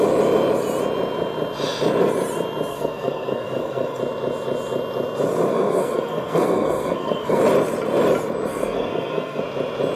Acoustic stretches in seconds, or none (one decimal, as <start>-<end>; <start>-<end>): 0.0-2.7; 4.0-5.5; 7.4-8.5; 9.4-10.0